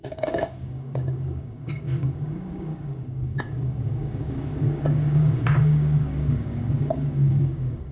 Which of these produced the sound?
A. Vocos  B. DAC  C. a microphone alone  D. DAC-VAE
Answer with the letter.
B